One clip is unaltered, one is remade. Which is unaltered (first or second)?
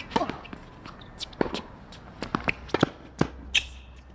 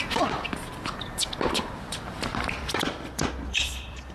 first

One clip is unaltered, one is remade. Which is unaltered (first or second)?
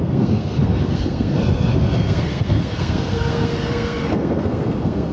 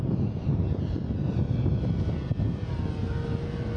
second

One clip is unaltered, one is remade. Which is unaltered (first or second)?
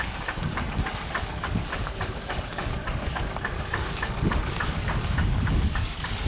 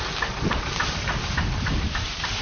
second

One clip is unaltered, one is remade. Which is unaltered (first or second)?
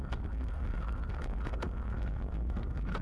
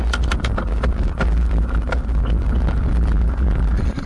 second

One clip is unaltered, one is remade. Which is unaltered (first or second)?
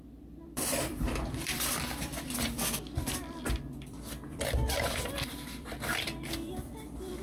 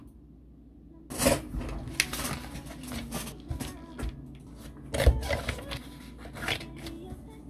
second